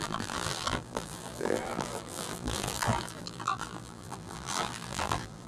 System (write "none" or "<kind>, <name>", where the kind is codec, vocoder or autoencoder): vocoder, BigVGAN v2